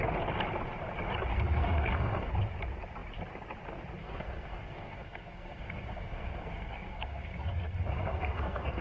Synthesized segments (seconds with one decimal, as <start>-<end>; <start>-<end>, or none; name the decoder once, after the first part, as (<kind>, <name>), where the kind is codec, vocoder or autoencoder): 1.3-2.3 (codec, SNAC); 4.0-8.8